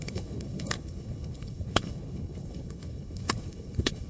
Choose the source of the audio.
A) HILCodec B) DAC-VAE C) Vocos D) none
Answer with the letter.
A